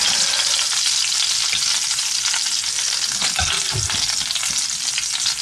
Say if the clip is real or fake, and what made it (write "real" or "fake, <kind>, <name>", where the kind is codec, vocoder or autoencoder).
real